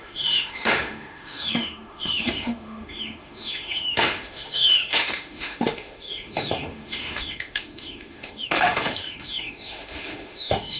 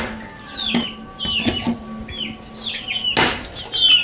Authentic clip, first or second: second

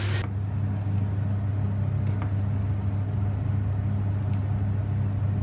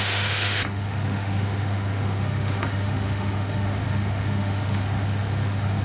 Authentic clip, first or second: first